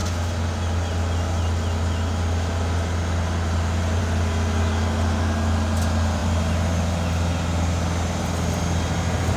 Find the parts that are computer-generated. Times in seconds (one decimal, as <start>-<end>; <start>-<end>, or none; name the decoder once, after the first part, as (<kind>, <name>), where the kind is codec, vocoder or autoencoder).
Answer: none